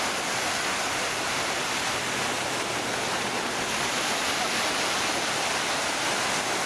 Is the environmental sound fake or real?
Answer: real